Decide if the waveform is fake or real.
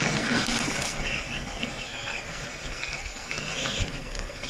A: fake